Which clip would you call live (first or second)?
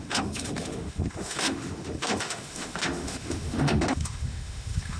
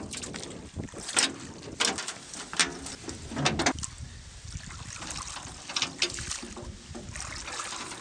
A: second